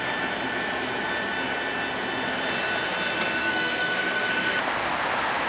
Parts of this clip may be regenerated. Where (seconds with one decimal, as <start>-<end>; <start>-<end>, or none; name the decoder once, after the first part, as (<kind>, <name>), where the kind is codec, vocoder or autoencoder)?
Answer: 3.4-4.3 (codec, SNAC)